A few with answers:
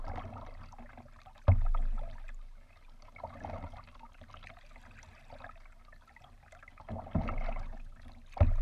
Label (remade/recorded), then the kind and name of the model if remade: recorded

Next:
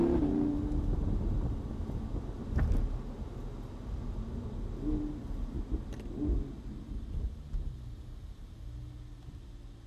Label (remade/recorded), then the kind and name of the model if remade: recorded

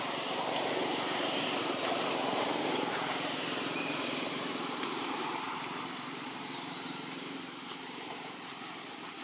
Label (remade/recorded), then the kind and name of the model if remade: remade, vocoder, BigVGAN v2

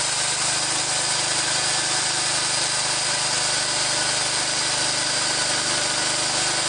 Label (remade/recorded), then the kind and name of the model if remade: recorded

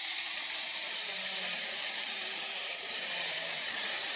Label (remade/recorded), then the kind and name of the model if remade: remade, vocoder, BigVGAN v2